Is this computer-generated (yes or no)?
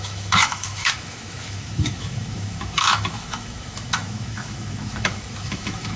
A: yes